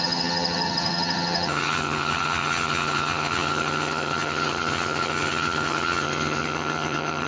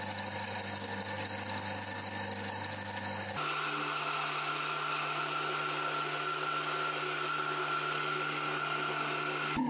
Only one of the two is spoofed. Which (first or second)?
first